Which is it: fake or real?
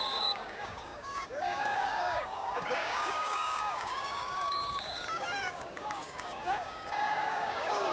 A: fake